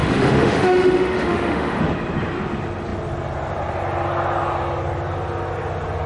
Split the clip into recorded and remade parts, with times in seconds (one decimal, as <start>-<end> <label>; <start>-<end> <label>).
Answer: 0.0-1.8 remade; 1.8-6.1 recorded